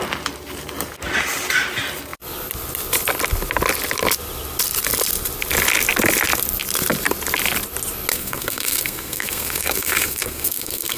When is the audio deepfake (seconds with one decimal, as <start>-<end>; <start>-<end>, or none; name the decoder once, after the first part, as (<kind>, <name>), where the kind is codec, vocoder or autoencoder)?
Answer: 8.1-11.0 (codec, SNAC)